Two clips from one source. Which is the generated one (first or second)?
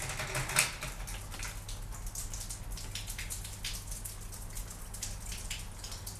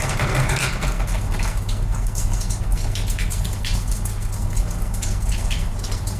second